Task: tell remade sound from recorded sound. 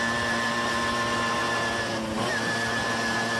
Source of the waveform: recorded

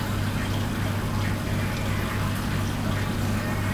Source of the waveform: recorded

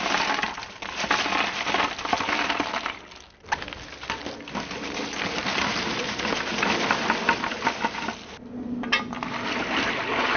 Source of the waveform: recorded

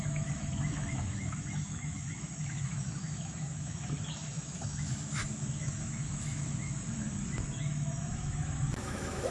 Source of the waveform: remade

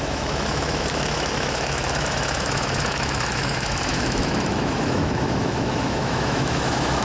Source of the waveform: remade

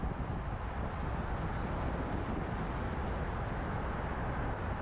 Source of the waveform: recorded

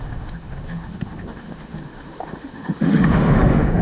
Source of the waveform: remade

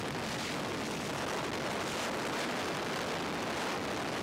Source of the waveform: recorded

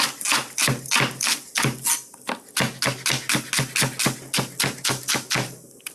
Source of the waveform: recorded